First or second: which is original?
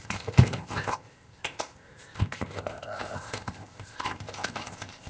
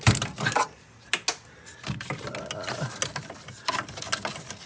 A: second